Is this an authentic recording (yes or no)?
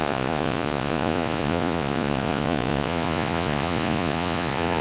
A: no